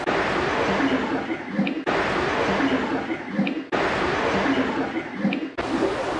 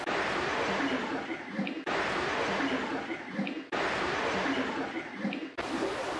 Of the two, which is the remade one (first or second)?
second